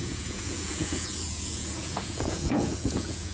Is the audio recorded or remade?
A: remade